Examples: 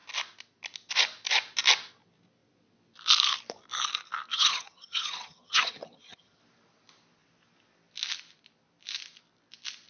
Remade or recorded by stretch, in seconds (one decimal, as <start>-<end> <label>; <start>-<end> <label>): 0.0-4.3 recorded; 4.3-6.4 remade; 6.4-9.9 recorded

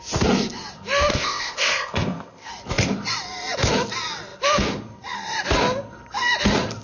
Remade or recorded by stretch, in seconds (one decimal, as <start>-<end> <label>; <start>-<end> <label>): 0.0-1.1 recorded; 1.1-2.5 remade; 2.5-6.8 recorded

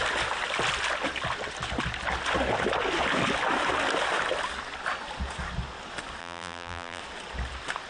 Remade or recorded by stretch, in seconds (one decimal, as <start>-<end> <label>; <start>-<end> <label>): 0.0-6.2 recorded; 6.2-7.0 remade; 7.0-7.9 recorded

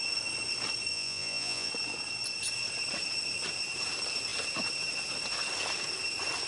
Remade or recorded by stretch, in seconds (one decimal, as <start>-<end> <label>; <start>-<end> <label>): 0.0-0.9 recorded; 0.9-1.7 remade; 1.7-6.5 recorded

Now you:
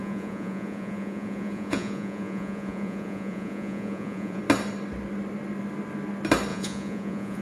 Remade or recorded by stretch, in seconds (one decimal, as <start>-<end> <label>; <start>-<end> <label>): 0.0-4.4 remade; 4.4-6.5 recorded; 6.5-7.4 remade

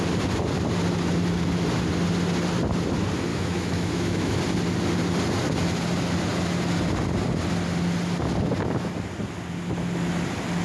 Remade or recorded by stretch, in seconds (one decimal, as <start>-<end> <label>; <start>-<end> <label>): 0.0-3.3 recorded; 3.3-4.4 remade; 4.4-10.6 recorded

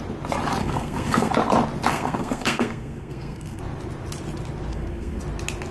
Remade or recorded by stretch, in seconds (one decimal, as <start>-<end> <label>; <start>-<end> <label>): 0.0-0.6 recorded; 0.6-1.3 remade; 1.3-1.9 recorded; 1.9-3.6 remade; 3.6-4.7 recorded; 4.7-5.2 remade; 5.2-5.7 recorded